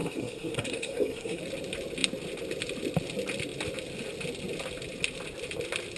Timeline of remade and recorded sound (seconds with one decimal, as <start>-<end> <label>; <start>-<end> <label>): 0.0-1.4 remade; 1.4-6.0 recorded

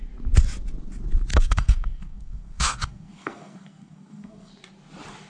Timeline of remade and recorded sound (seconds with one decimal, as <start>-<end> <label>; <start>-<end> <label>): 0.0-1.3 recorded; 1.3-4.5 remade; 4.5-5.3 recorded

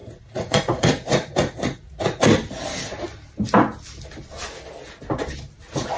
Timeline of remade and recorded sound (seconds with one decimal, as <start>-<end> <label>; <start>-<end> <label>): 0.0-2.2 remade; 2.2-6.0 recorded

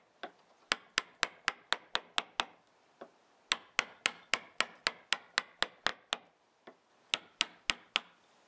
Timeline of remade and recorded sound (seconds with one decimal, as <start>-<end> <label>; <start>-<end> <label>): 0.0-8.5 recorded

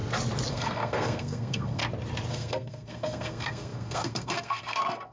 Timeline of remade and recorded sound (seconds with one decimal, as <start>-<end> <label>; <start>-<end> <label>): 0.0-0.5 recorded; 0.5-1.8 remade; 1.8-2.3 recorded; 2.3-5.1 remade